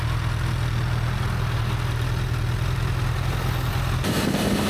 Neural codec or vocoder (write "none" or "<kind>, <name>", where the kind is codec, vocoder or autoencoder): none